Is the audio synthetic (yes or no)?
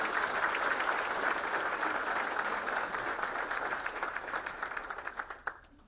no